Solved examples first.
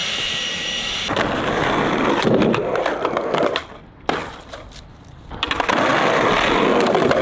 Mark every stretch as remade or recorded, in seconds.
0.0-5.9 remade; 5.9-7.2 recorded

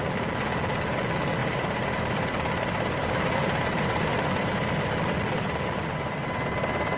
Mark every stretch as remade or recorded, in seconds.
0.0-1.4 recorded; 1.4-4.5 remade; 4.5-7.0 recorded

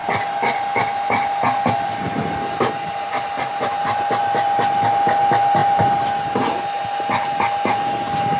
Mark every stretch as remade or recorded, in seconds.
0.0-3.5 recorded; 3.5-4.2 remade; 4.2-8.4 recorded

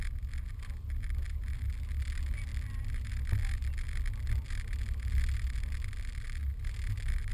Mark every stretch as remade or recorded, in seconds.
0.0-7.3 recorded

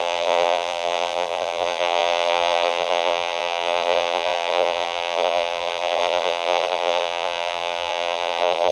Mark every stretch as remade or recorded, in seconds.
0.0-8.7 remade

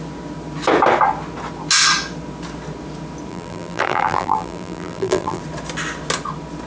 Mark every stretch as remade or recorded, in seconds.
0.0-3.3 recorded; 3.3-5.4 remade; 5.4-6.7 recorded

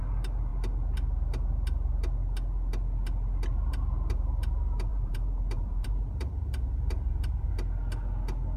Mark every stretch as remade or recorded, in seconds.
0.0-4.9 recorded; 4.9-7.5 remade; 7.5-8.6 recorded